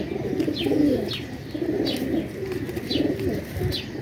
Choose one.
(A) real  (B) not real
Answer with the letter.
A